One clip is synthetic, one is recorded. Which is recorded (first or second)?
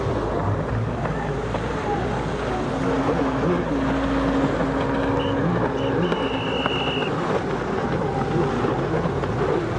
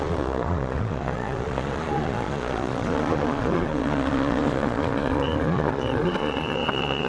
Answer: first